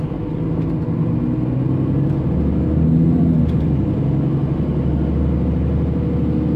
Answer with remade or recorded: recorded